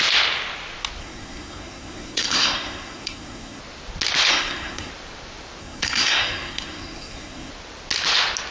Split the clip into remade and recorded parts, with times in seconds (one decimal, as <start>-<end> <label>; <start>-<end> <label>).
0.0-1.0 recorded; 1.0-3.6 remade; 3.6-4.3 recorded; 4.3-4.9 remade; 4.9-5.6 recorded; 5.6-7.5 remade; 7.5-8.5 recorded